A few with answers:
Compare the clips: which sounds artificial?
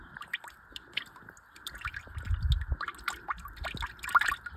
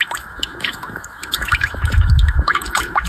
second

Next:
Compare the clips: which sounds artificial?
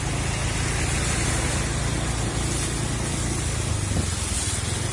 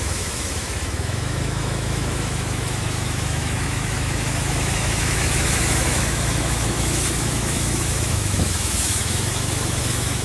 second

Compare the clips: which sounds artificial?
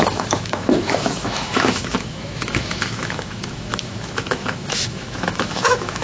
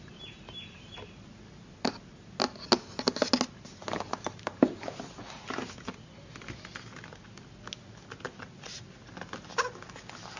first